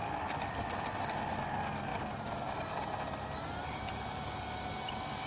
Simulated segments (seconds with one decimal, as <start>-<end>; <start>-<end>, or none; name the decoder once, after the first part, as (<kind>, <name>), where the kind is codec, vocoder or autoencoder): none